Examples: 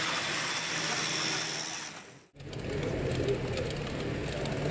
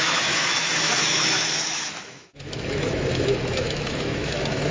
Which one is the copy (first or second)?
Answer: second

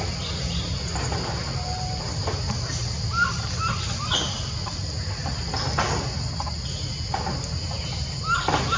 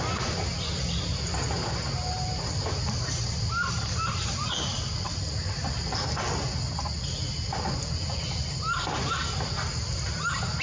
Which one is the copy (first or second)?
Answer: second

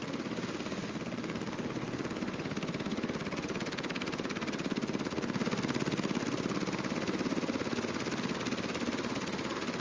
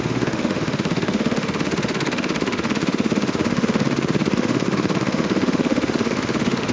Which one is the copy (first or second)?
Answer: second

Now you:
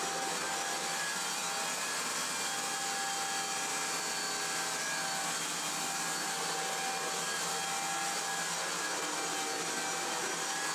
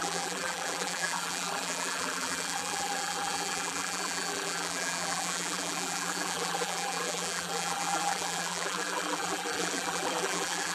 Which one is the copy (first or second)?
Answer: second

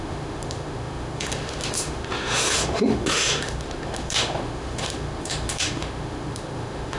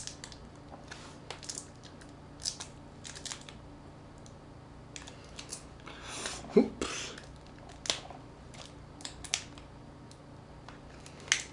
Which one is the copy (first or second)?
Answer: first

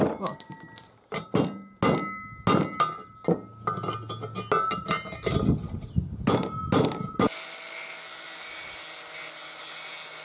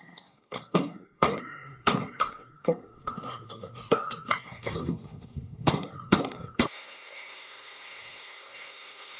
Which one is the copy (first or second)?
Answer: second